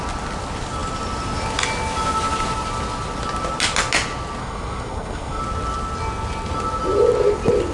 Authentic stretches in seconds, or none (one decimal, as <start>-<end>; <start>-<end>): 0.0-4.4; 5.4-7.7